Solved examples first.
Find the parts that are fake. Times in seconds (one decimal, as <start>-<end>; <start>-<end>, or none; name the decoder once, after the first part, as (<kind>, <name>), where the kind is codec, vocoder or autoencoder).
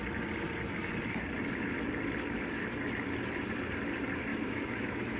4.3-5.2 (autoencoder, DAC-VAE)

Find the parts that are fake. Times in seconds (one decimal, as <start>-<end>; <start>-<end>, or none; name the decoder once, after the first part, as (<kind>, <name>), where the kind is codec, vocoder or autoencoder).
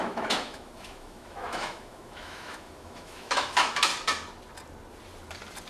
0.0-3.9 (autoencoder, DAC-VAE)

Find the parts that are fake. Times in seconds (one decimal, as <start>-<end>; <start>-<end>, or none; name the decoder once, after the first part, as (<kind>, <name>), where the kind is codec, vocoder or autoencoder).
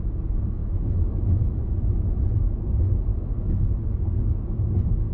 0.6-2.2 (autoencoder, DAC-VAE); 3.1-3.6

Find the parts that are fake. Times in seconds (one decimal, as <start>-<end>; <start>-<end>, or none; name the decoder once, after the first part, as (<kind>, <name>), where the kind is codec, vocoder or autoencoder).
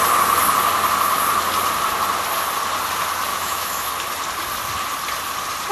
3.3-3.9 (autoencoder, DAC-VAE)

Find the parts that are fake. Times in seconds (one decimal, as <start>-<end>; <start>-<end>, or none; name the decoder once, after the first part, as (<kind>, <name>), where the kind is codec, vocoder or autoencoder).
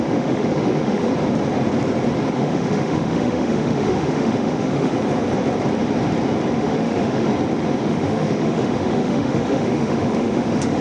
0.0-1.1 (autoencoder, DAC-VAE); 2.3-4.9; 6.6-7.3; 7.8-10.8